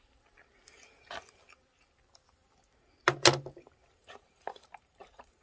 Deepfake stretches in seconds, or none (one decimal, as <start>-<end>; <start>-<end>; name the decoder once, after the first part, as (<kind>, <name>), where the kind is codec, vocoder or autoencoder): 4.0-5.4 (vocoder, BigVGAN v2)